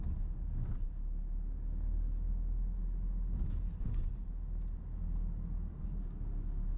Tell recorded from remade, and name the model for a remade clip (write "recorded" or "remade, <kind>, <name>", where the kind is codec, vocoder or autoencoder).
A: recorded